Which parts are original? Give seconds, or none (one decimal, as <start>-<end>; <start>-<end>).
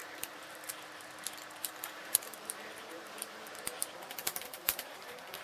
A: 0.7-1.6; 3.5-4.2